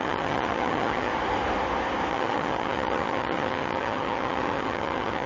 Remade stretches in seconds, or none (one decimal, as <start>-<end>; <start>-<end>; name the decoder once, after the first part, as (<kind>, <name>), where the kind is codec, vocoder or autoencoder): 0.0-1.1 (vocoder, HiFi-GAN); 2.1-5.3